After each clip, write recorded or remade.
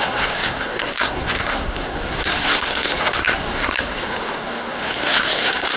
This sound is remade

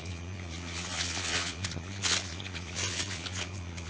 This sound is remade